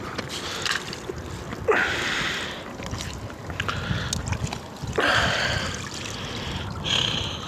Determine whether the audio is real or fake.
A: real